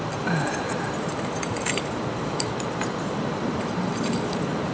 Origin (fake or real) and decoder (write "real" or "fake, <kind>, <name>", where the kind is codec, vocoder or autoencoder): fake, vocoder, BigVGAN v2